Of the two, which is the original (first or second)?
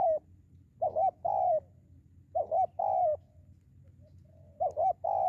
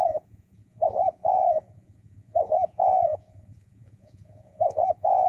first